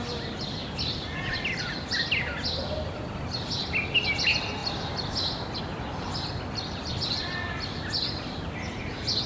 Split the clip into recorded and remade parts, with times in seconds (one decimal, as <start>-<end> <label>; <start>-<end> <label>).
0.0-9.3 recorded